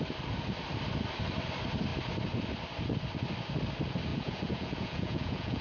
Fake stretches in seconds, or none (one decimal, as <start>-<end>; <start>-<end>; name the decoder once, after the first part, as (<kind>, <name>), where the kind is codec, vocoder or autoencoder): 4.1-5.6 (vocoder, Vocos)